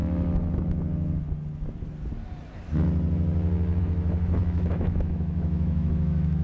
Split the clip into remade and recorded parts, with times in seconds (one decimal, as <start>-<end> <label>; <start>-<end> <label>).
0.0-3.8 recorded; 3.8-6.4 remade